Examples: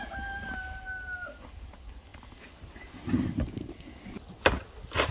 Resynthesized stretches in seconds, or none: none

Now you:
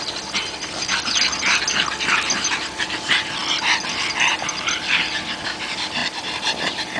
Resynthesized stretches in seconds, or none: none

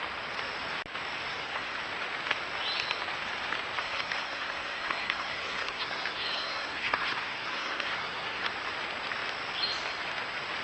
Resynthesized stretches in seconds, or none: 1.3-1.8 (codec, SNAC); 3.8-8.5

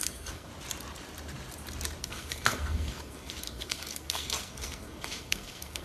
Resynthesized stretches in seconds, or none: 0.0-0.5 (codec, SNAC); 2.0-5.8

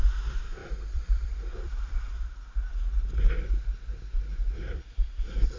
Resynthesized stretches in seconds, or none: 0.6-2.1 (vocoder, BigVGAN v2); 4.3-4.8